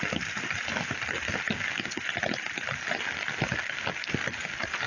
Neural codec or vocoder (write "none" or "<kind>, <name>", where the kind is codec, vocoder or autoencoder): none